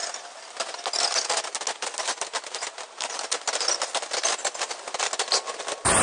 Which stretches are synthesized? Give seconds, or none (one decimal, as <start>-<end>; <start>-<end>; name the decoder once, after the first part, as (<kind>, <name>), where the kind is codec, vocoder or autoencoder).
none